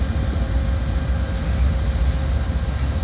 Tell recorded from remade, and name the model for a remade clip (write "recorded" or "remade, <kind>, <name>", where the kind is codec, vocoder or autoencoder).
recorded